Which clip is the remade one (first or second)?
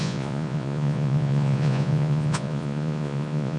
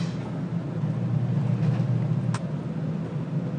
first